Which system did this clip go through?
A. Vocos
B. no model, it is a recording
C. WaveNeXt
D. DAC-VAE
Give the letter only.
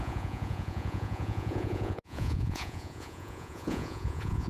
A